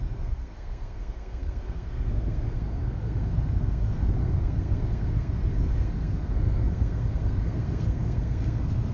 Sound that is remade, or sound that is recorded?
remade